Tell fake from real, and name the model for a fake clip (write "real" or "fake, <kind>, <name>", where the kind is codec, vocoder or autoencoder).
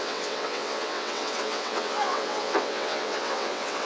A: fake, vocoder, WaveNeXt